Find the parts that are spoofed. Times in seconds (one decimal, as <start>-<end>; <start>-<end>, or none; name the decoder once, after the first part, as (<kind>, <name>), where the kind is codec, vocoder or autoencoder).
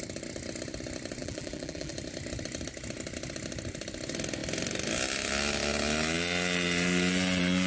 1.2-1.9 (vocoder, BigVGAN v2)